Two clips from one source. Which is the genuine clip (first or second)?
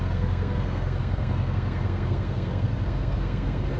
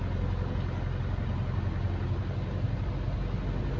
second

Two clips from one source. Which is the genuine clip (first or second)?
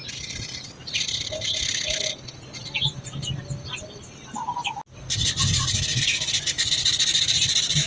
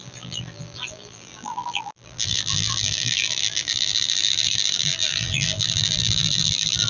first